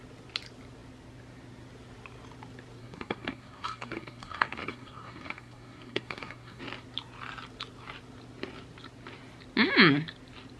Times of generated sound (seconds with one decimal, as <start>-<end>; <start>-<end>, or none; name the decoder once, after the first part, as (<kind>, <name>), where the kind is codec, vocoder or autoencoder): 2.8-6.6 (codec, SNAC)